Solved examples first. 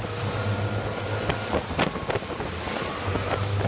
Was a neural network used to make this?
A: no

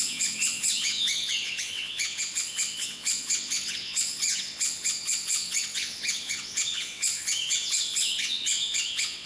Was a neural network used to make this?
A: yes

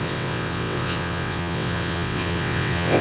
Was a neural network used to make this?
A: yes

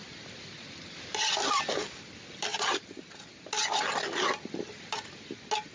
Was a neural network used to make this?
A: no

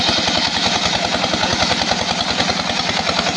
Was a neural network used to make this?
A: no